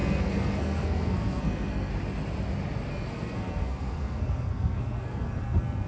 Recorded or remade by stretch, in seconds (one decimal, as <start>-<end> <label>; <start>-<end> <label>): 0.0-1.9 remade; 1.9-2.9 recorded; 2.9-5.9 remade